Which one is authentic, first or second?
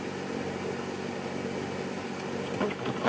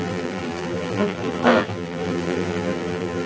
first